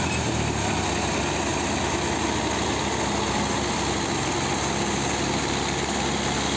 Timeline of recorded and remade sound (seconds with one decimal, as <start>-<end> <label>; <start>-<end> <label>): 0.0-6.6 recorded